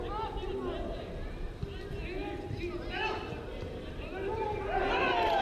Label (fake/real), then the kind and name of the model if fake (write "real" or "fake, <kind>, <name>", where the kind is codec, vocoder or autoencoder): real